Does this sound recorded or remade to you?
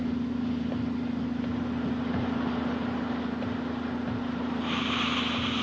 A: recorded